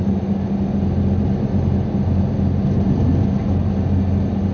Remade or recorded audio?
recorded